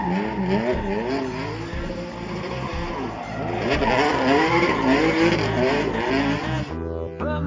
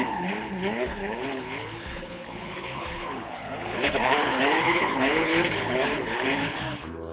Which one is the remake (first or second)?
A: second